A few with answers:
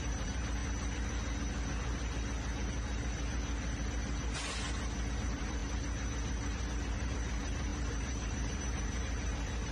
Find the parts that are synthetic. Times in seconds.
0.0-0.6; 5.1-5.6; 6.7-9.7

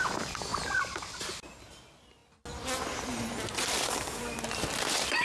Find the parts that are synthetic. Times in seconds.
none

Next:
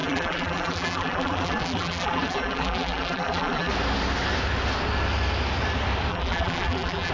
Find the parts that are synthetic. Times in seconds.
0.0-3.7; 6.1-7.1